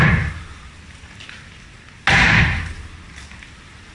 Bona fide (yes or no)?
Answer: yes